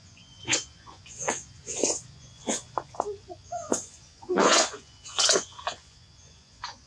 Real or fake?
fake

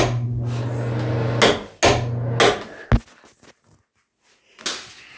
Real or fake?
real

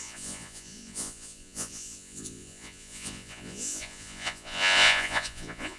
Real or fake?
fake